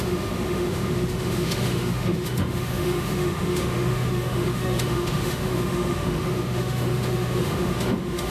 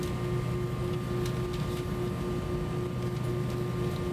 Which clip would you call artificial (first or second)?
first